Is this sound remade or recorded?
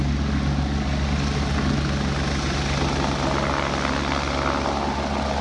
recorded